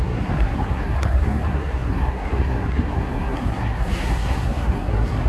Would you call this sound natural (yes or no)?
no